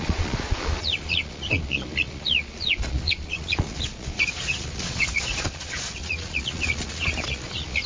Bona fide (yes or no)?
no